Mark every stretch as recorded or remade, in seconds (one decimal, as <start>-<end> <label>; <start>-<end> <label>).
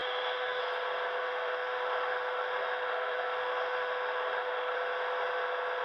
0.0-0.6 remade; 0.6-1.2 recorded; 1.2-4.7 remade; 4.7-5.8 recorded